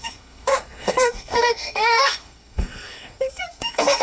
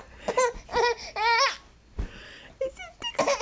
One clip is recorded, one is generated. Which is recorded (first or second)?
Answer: second